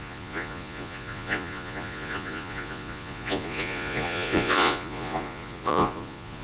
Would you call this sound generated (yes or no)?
yes